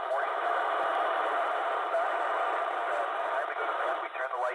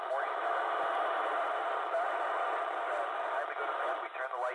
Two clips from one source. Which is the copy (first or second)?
first